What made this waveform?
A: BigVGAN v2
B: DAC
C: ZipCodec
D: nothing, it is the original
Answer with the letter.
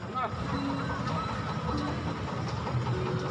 D